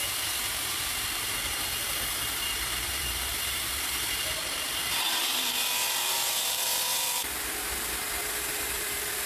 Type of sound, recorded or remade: remade